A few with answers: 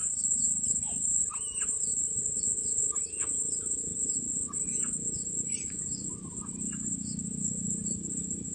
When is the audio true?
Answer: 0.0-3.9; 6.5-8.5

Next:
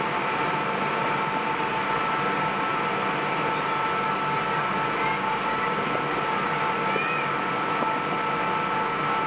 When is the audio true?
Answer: 0.0-9.3

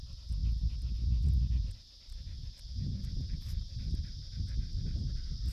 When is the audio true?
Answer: 0.0-3.0; 4.0-5.5

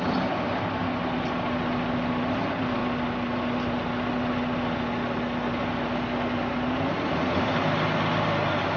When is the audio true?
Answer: 0.0-8.8

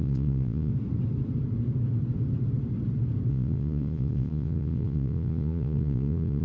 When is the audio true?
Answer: 0.7-3.3

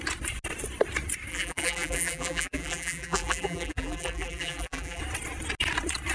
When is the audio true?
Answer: 0.0-1.3; 5.0-6.1

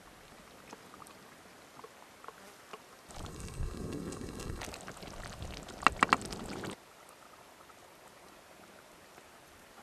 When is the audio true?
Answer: 0.0-3.3; 4.6-9.8